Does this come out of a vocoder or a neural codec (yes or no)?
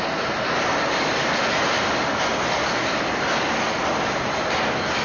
no